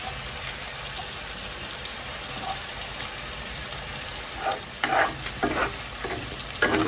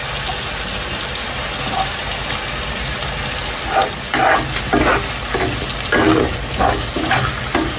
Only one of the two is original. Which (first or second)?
second